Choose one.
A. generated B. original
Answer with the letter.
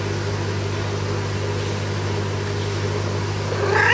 B